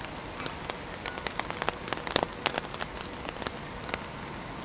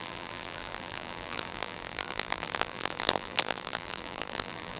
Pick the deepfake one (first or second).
second